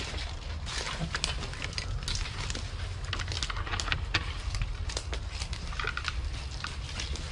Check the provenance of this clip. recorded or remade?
recorded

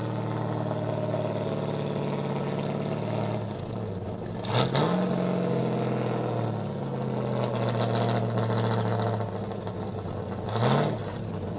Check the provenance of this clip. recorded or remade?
recorded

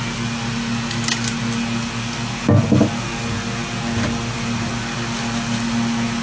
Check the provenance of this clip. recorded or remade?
recorded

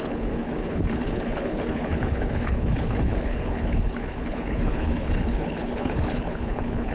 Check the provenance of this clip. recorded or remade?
remade